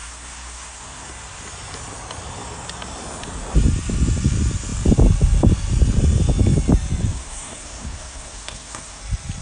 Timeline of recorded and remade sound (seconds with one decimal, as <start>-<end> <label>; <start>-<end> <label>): 0.0-1.1 remade; 1.1-7.1 recorded; 7.1-9.0 remade; 9.0-9.4 recorded